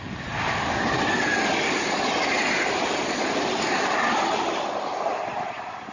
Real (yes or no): no